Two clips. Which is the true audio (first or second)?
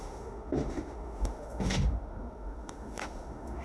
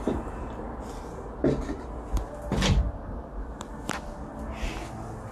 second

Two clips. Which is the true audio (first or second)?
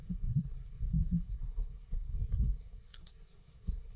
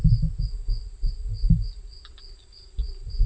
second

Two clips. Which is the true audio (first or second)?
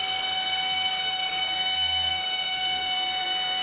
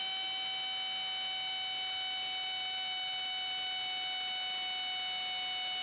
second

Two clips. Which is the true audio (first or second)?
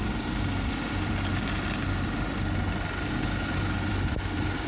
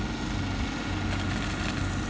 second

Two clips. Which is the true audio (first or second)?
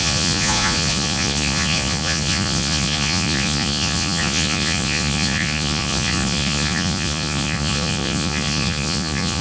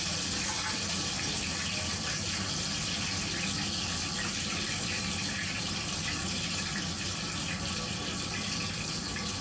second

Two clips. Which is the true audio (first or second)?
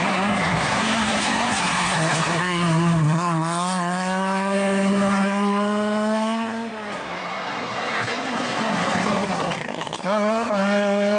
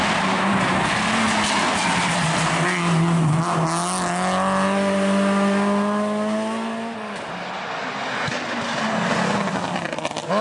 second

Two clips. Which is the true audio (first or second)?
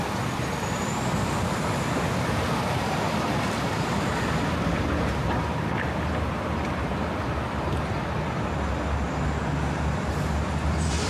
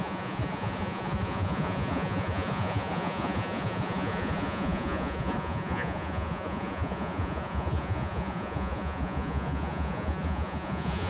first